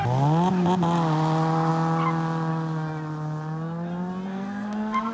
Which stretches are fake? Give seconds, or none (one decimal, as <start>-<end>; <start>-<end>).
4.3-5.1